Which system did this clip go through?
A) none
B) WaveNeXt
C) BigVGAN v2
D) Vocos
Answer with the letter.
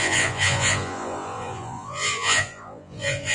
D